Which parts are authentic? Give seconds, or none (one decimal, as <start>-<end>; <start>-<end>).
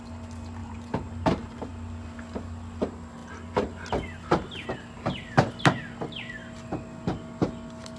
0.0-0.6; 1.7-8.0